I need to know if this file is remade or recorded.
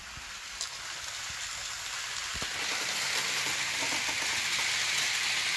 recorded